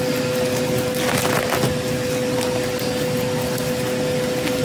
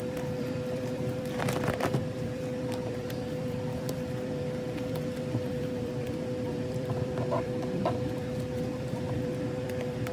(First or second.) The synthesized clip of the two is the second